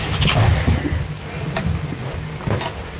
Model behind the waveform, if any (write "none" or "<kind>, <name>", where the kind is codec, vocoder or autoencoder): none